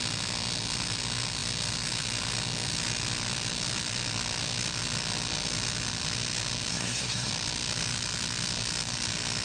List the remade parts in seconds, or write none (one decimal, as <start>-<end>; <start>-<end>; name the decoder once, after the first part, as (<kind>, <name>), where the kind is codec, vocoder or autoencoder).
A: 6.7-7.3 (codec, SNAC)